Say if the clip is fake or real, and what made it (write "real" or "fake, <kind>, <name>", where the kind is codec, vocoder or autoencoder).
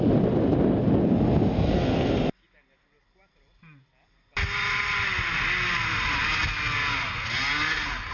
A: real